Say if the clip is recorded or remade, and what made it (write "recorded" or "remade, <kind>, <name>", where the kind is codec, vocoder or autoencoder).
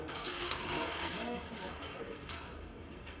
remade, codec, SNAC